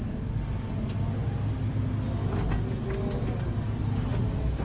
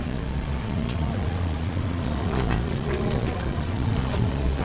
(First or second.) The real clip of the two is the first